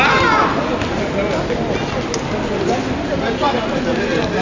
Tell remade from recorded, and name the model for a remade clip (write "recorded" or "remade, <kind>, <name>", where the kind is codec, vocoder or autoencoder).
recorded